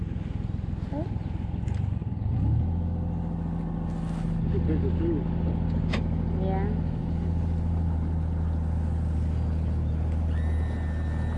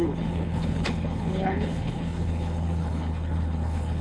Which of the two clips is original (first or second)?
first